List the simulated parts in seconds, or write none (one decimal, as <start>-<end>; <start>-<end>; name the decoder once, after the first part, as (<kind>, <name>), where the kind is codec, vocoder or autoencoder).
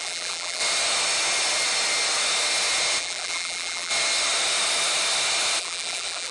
0.0-0.6 (vocoder, BigVGAN v2); 3.0-3.9; 5.6-6.3